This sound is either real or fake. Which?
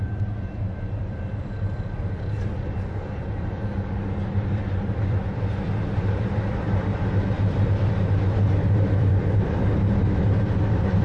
fake